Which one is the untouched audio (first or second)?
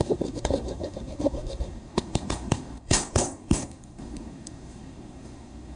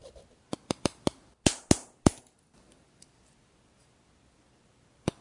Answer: second